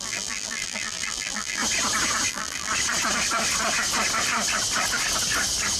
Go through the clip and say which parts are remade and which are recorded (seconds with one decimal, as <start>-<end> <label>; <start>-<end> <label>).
0.0-1.6 remade; 1.6-2.3 recorded; 2.3-2.7 remade; 2.7-5.8 recorded